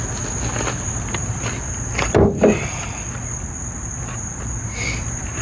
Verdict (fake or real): real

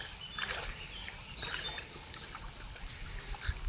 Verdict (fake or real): real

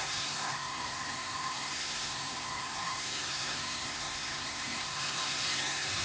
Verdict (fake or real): fake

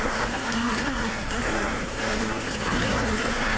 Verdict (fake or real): fake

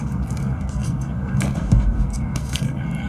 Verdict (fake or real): fake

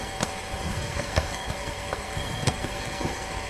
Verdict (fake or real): fake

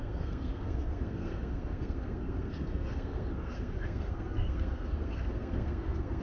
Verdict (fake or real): fake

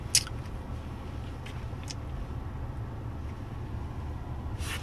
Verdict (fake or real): real